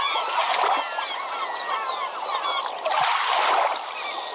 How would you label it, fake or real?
real